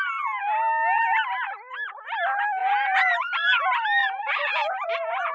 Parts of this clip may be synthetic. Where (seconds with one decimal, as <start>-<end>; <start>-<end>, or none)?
2.6-3.6; 4.0-5.3